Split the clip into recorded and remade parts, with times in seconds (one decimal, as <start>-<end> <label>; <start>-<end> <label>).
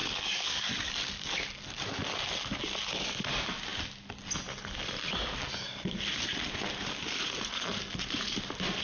0.0-2.2 remade; 2.2-8.8 recorded